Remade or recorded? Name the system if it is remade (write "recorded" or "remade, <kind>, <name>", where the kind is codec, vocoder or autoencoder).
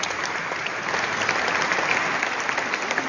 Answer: recorded